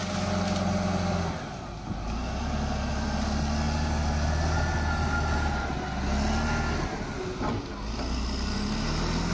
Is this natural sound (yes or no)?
yes